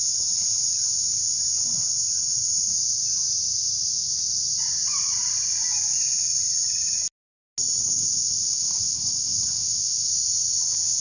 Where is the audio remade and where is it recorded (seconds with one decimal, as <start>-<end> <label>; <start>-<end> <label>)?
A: 0.0-7.8 recorded; 7.8-10.1 remade; 10.1-11.0 recorded